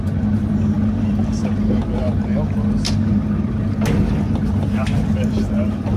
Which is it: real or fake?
real